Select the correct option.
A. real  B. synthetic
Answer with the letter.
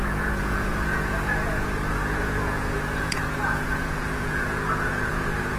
B